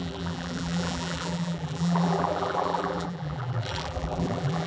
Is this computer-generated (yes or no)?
yes